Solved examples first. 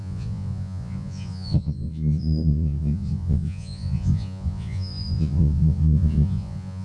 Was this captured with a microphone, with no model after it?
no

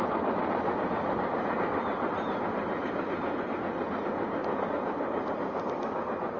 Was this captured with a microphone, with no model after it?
yes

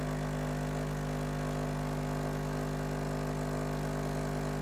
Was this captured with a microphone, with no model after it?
yes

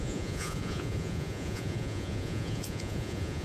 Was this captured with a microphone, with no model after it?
no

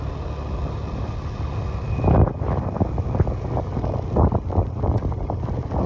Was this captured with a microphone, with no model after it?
yes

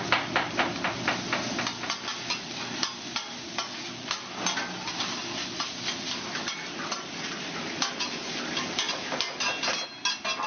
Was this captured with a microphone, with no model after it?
yes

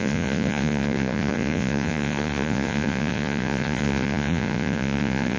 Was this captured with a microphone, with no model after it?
no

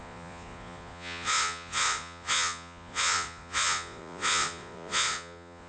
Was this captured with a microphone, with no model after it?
no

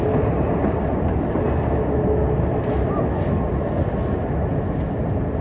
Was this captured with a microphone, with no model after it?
yes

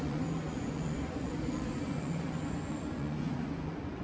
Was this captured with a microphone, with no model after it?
no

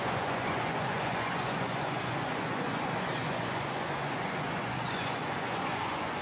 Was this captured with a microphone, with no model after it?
no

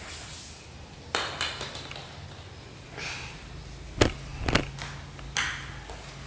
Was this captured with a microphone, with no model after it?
yes